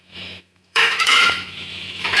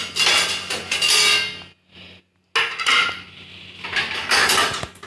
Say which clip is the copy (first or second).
first